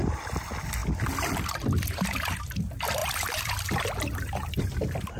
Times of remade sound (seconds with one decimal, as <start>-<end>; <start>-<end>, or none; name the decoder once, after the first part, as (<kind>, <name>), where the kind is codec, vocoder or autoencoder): 3.0-4.6 (vocoder, BigVGAN v2)